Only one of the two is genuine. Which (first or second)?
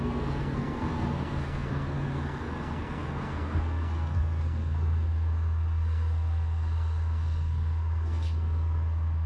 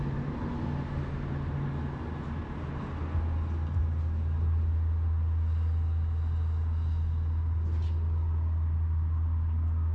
second